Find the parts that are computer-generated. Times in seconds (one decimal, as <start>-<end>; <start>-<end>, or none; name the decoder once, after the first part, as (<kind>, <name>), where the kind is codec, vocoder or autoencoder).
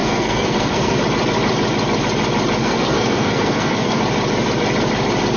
0.0-1.0 (codec, SNAC); 2.6-4.0